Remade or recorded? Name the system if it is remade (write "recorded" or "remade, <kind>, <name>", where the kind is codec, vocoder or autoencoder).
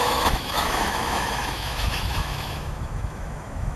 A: remade, autoencoder, DAC-VAE